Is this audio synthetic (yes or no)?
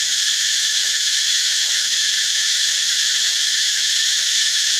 yes